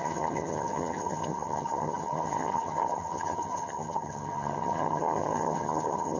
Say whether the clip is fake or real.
fake